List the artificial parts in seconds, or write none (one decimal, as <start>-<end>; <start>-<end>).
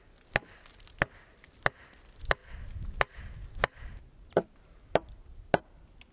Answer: none